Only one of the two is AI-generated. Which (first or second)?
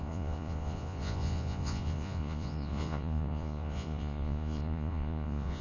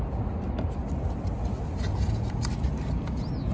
first